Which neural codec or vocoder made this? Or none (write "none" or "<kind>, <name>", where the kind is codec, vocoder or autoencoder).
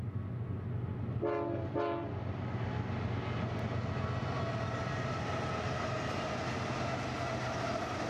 none